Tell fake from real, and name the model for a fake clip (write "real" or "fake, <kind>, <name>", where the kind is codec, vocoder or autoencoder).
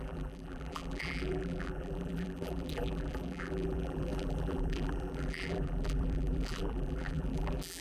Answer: fake, vocoder, BigVGAN v2